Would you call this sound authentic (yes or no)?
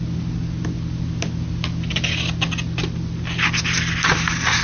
yes